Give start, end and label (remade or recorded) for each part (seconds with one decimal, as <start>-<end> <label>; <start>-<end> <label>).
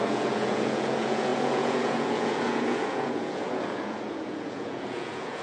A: 0.0-5.4 remade